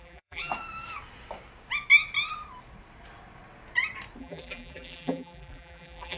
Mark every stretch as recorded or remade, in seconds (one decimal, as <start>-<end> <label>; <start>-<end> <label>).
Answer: 0.0-0.5 remade; 0.5-4.2 recorded; 4.2-6.2 remade